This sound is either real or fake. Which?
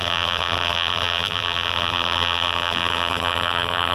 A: fake